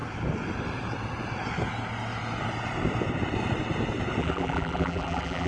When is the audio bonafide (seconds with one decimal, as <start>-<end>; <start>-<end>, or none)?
0.0-4.2

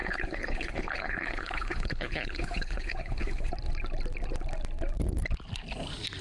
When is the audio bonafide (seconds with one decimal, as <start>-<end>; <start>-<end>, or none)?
3.5-6.2